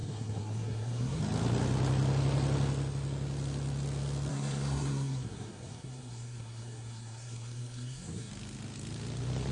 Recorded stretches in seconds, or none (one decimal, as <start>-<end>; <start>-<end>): 1.2-4.3; 8.3-9.5

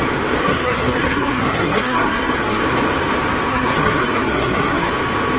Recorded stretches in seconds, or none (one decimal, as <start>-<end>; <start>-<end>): 0.0-0.4; 2.6-3.5; 4.9-5.4

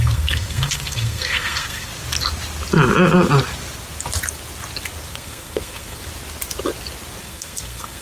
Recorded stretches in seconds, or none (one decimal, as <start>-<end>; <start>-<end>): 1.9-5.1; 6.0-7.2

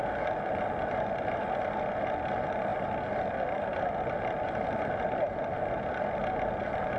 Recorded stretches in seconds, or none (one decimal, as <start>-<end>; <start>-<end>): 0.0-7.0

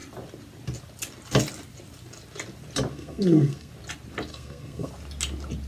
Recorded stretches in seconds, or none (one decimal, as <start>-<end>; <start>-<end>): 0.0-2.9; 3.7-4.3; 4.9-5.7

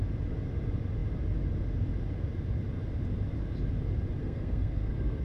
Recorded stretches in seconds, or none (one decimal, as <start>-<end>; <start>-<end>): 0.0-4.2